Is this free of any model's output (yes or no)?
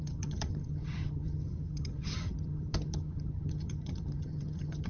no